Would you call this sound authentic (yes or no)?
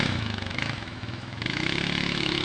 no